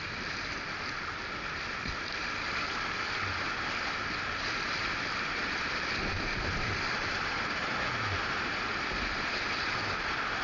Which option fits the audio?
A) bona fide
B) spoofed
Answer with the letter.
A